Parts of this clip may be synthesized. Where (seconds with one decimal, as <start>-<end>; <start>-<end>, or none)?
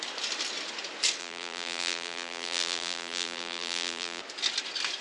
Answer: 1.2-4.2